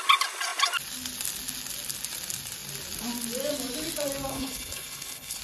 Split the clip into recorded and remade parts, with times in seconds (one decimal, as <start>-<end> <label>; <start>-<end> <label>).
0.0-4.3 recorded; 4.3-5.4 remade